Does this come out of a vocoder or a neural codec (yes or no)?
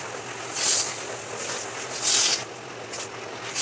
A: no